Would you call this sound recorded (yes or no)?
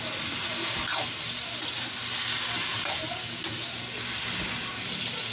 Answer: yes